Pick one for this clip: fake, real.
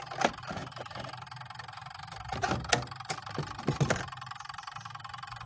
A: real